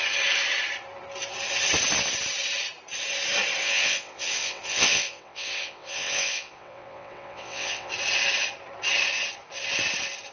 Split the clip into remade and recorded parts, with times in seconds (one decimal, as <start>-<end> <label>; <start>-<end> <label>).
0.0-3.6 recorded; 3.6-7.9 remade; 7.9-10.3 recorded